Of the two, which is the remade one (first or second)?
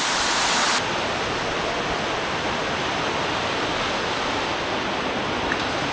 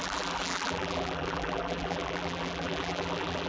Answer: second